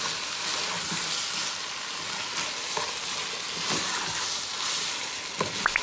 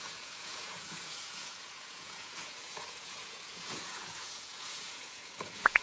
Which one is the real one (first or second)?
first